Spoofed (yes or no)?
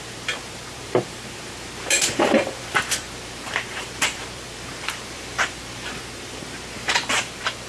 yes